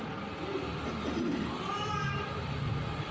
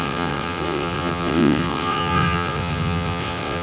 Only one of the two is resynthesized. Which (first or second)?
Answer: second